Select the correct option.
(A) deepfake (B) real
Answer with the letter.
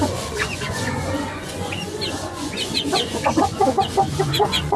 A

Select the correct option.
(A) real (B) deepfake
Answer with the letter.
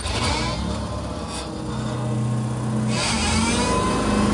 A